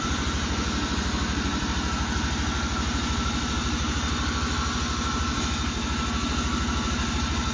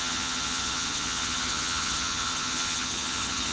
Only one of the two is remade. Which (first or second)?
second